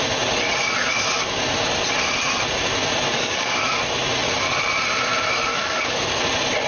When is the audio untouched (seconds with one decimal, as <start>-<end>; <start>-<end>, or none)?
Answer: 0.0-3.1; 3.8-5.5; 6.2-6.7